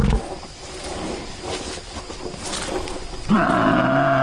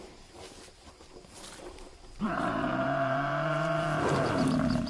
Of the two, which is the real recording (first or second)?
first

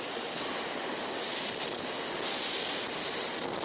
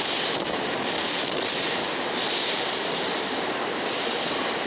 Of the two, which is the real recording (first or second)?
first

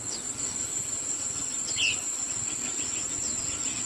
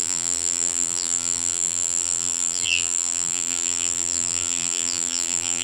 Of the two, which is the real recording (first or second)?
first